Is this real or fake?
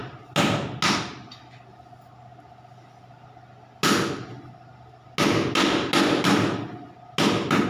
real